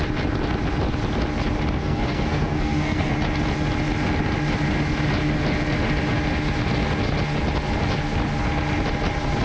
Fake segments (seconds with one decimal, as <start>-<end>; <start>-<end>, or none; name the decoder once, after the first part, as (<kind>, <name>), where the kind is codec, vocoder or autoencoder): 1.8-3.1 (codec, SNAC)